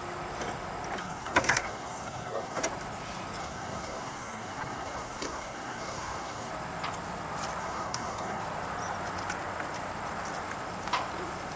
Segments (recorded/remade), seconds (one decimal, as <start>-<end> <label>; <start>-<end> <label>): 0.0-1.0 recorded; 1.0-2.6 remade; 2.6-3.4 recorded; 3.4-6.5 remade; 6.5-7.6 recorded; 7.6-8.4 remade; 8.4-11.6 recorded